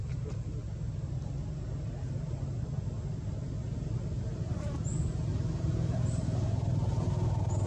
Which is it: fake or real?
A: real